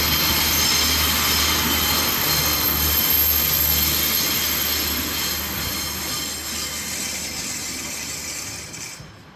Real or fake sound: real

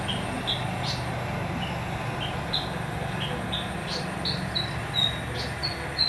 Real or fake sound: real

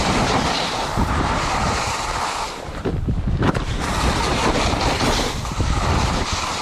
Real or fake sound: fake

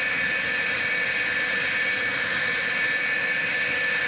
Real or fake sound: real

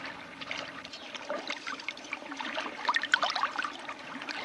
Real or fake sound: fake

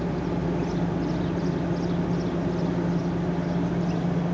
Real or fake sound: real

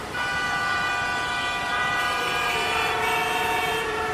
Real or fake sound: fake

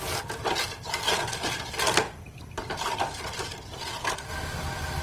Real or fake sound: real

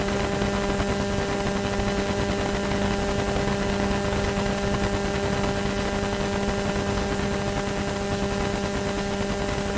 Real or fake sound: real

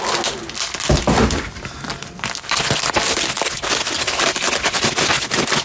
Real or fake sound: real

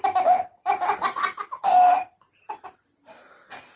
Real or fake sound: real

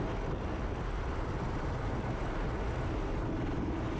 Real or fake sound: real